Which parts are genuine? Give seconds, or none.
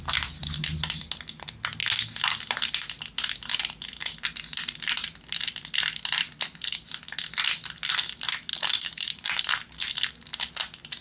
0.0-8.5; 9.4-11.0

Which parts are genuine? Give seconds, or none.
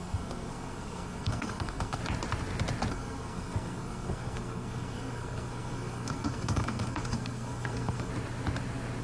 2.0-2.9; 8.1-9.0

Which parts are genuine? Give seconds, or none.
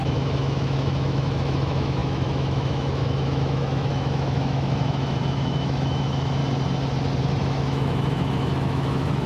6.4-7.2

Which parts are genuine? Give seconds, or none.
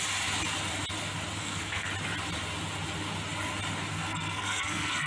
0.0-1.4; 1.9-3.9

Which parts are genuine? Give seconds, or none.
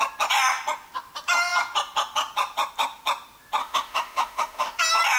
0.0-3.6; 4.8-5.2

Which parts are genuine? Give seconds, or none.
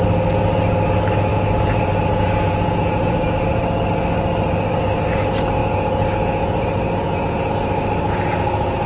0.0-1.3; 3.6-5.6; 7.5-8.9